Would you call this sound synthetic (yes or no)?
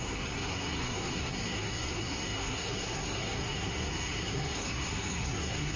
yes